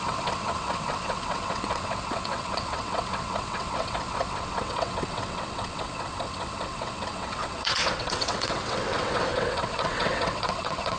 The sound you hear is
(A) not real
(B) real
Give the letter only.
A